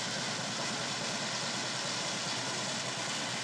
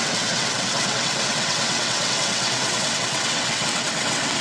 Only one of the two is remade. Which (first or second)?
second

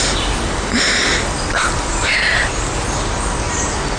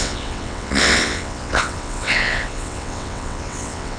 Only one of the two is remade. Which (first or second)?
second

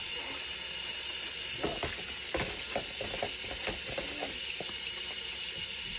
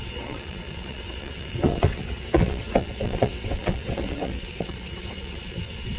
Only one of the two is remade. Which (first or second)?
second